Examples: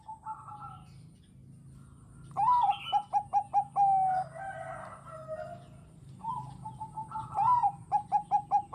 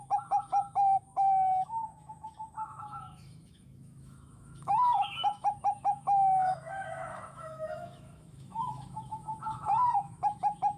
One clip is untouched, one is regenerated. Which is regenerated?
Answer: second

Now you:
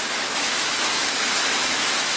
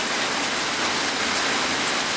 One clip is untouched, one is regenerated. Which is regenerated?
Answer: first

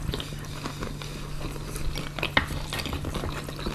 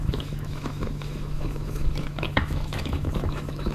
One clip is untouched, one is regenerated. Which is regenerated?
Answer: second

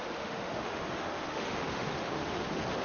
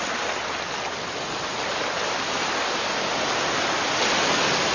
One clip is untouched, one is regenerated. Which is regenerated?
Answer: first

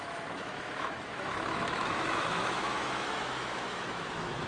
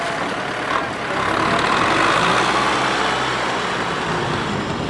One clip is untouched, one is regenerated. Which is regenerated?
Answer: first